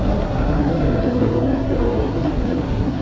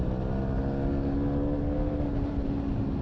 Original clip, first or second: second